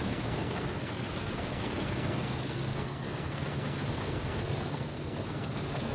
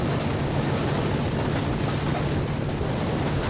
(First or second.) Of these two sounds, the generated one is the first